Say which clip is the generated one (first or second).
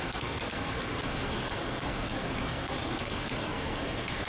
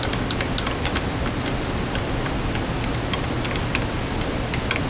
first